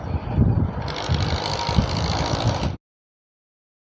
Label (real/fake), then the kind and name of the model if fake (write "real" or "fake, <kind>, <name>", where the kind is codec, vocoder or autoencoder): real